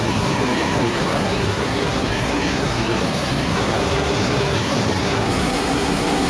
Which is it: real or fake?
fake